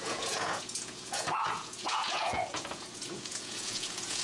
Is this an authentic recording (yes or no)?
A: no